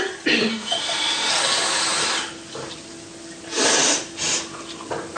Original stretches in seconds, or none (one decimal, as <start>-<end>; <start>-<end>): 0.0-0.5; 1.3-5.2